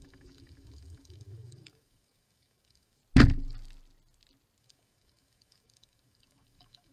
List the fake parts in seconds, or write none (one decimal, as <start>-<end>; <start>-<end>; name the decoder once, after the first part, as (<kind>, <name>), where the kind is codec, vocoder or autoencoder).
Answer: 0.0-3.0 (codec, DAC); 4.6-6.9